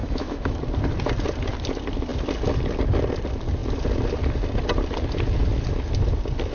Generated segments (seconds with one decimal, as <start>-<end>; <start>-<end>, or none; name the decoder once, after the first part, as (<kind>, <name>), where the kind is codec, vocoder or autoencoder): 0.0-0.6 (autoencoder, DAC-VAE)

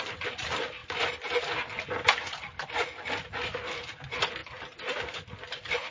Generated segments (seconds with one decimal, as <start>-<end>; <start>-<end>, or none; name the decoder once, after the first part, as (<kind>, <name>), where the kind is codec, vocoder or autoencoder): none

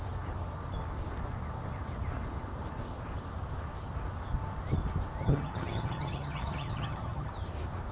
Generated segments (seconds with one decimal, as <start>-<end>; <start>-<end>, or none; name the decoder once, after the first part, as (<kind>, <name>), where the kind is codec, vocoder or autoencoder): 5.2-7.3 (vocoder, HiFi-GAN)

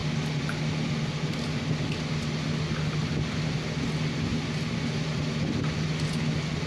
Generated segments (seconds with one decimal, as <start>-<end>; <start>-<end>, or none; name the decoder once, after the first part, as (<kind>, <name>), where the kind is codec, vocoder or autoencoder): 4.3-5.4 (vocoder, BigVGAN v2)

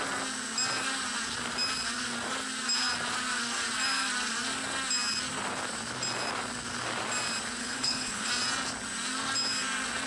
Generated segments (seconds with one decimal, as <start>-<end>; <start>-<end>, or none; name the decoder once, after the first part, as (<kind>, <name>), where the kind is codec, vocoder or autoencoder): 7.6-8.3 (codec, HILCodec)

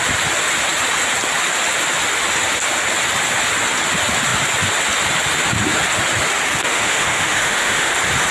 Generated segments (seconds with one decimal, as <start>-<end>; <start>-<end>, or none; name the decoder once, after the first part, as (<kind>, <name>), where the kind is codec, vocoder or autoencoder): 6.7-7.9 (autoencoder, DAC-VAE)

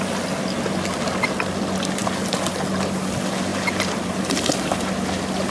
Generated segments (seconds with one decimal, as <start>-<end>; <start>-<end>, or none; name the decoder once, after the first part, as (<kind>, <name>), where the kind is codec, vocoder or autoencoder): none

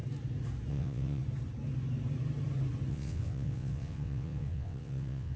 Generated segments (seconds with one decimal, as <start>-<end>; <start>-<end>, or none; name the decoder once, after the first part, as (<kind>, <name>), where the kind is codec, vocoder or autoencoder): 0.7-1.2 (vocoder, WaveNeXt); 2.9-5.4